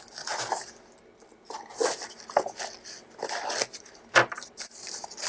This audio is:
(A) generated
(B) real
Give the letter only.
B